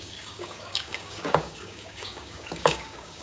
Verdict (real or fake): fake